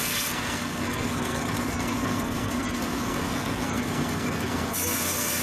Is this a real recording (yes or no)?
no